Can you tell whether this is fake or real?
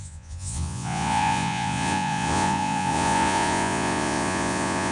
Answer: fake